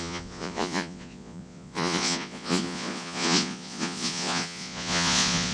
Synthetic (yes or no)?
yes